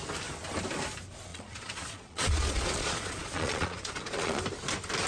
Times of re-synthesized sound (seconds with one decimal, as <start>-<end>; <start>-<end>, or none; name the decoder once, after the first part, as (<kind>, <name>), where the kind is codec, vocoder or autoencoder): 1.3-4.4 (vocoder, Vocos)